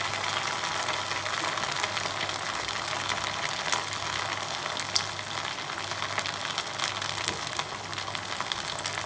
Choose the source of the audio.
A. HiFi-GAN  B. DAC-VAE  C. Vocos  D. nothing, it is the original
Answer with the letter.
D